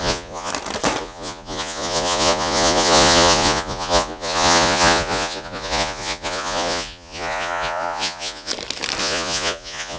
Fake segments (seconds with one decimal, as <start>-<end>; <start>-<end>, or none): 0.0-0.5; 1.0-8.5; 9.0-10.0